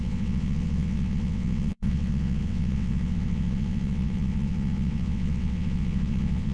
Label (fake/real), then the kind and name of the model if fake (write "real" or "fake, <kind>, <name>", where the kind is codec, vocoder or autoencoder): fake, vocoder, WaveNeXt